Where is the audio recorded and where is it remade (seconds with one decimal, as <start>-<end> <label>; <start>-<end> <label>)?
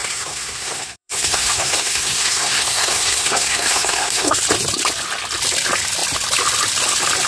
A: 0.0-4.4 remade; 4.4-7.3 recorded